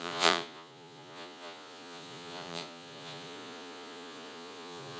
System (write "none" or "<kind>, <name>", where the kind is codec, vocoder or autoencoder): vocoder, Vocos